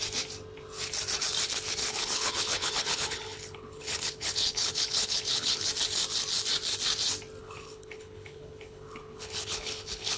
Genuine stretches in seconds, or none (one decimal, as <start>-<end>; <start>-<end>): 0.0-1.8; 5.7-7.4